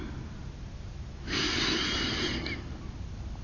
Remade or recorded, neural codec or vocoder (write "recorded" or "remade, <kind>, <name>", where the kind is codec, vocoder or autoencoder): recorded